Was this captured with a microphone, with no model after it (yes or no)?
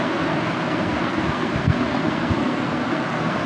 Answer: no